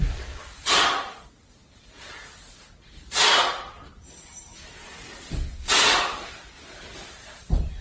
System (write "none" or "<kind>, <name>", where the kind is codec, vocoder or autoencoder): vocoder, BigVGAN v2